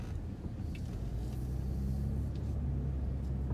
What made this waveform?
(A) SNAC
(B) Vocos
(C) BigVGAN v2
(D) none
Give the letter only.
D